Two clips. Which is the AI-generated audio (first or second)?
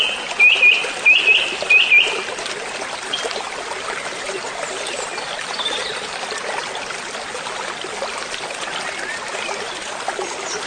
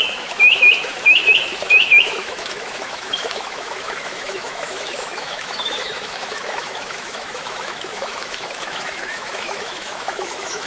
second